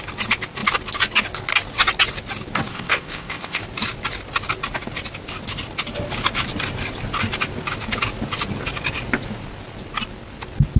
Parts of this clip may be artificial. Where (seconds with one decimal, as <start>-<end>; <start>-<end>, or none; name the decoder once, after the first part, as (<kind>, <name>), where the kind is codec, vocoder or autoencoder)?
2.7-3.6 (codec, ZipCodec)